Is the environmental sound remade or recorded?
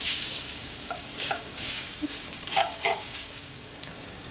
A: remade